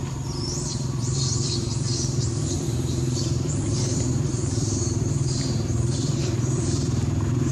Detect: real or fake fake